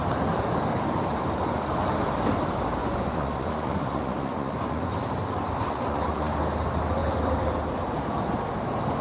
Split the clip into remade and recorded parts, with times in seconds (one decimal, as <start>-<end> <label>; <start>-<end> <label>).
0.0-2.8 recorded; 2.8-4.9 remade; 4.9-5.6 recorded; 5.6-6.3 remade; 6.3-9.0 recorded